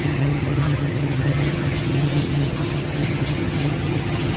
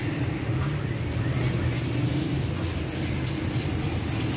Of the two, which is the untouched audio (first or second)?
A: second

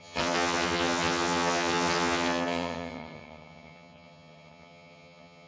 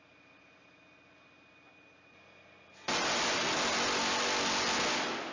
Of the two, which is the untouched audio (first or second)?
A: second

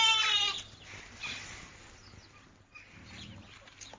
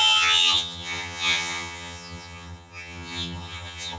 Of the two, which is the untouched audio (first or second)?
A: first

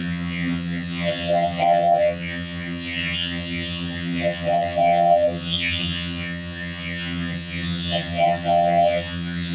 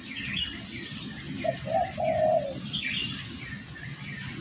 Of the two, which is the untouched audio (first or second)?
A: second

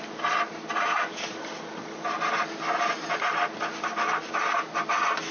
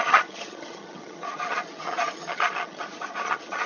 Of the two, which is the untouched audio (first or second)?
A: first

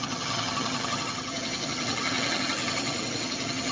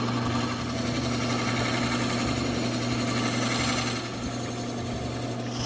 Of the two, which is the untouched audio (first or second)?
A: second